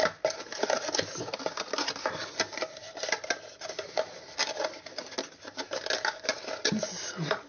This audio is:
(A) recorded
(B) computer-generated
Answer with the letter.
A